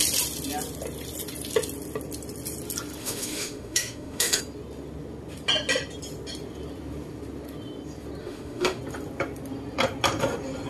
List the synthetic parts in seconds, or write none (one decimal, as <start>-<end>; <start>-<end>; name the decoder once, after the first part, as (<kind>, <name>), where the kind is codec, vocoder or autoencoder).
3.0-4.4 (autoencoder, DAC-VAE); 8.2-8.8

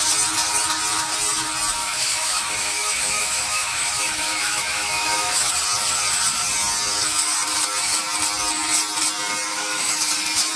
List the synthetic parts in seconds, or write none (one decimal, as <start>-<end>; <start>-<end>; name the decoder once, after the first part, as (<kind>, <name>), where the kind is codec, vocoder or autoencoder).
1.8-5.5 (autoencoder, DAC-VAE); 9.5-10.1

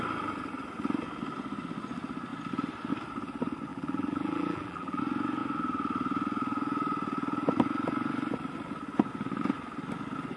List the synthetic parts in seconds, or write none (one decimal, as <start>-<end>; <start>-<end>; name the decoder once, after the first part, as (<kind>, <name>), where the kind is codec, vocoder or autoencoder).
3.7-5.0 (vocoder, BigVGAN v2)

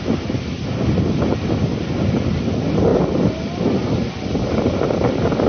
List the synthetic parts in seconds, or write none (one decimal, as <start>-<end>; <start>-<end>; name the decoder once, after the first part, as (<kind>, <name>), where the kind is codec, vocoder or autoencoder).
none